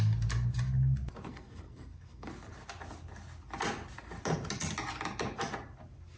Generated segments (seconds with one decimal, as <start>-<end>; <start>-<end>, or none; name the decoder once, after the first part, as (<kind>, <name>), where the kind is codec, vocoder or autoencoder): 1.3-2.3 (codec, SNAC)